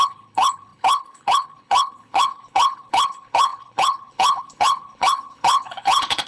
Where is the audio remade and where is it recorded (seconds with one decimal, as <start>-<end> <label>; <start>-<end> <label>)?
0.0-6.3 remade